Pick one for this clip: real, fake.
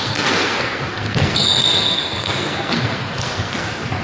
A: fake